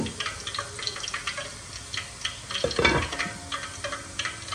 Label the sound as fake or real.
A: real